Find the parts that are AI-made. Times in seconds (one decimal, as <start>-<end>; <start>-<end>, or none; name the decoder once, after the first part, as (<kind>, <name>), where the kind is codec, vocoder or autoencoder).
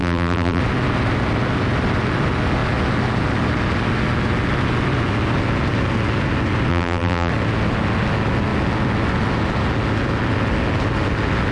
0.0-0.6 (vocoder, BigVGAN v2); 6.7-7.3